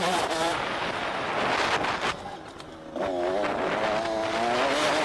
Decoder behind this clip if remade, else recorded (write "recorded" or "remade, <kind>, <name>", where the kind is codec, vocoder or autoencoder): recorded